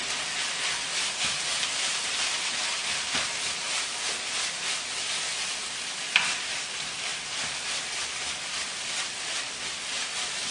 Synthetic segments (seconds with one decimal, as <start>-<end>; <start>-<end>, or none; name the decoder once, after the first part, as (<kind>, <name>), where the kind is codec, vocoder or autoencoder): 0.0-0.6 (vocoder, BigVGAN v2); 2.7-3.9; 4.4-10.5